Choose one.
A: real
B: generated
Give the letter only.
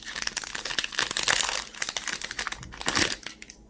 A